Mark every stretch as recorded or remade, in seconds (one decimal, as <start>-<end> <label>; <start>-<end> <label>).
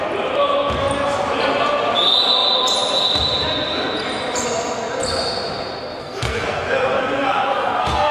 0.0-6.0 recorded; 6.0-8.1 remade